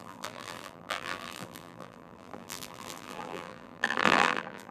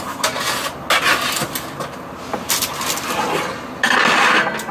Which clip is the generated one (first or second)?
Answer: first